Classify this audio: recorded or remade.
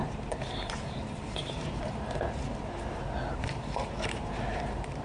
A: remade